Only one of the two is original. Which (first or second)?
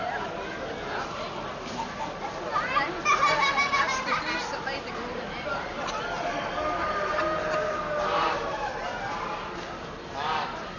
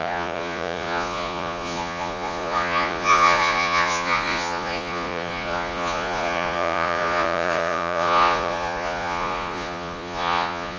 first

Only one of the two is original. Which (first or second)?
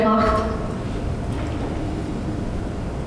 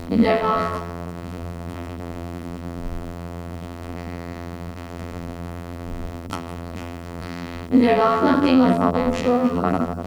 first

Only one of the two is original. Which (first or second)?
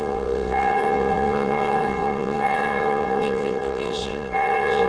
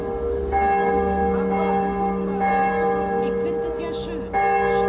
second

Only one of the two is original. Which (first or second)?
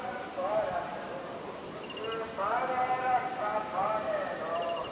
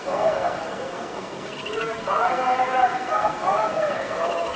first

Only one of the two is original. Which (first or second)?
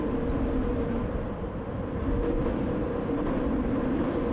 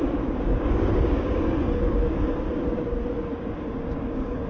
first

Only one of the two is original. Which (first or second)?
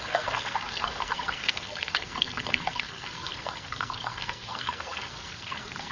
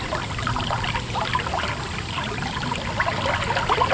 second